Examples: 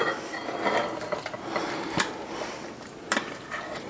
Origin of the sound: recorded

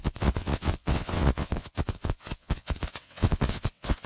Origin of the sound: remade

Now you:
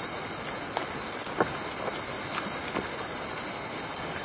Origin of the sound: recorded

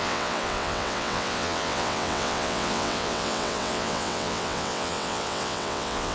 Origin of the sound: remade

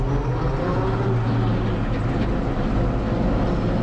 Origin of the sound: recorded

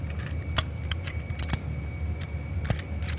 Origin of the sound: recorded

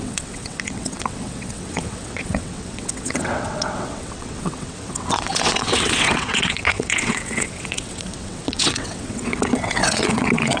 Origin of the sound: remade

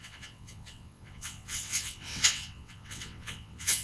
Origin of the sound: remade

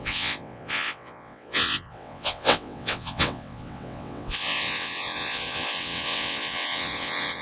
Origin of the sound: remade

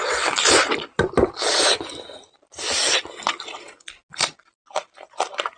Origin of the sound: recorded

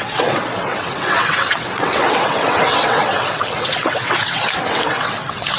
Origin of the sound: remade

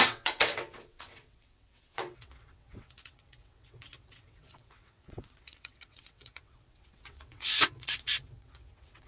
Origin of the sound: remade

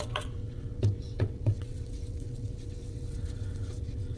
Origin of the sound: remade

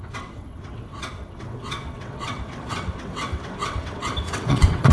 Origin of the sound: remade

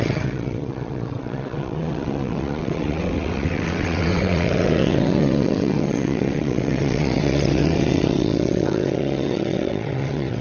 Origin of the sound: remade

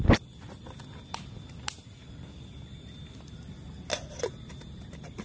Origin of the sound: recorded